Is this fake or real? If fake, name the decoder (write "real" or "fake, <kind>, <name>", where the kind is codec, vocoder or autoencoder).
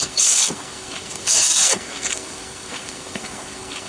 fake, codec, SNAC